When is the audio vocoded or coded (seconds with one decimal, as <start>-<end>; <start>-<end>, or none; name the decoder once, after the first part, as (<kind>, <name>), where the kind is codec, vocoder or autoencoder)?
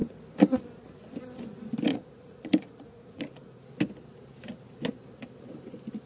1.9-3.6 (vocoder, Vocos)